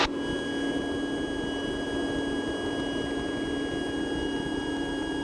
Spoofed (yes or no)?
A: no